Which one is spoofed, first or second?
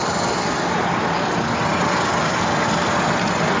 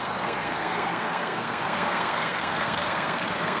second